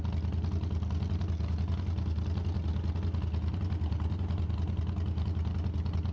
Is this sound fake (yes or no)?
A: no